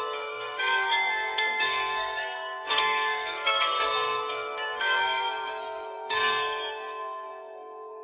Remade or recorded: remade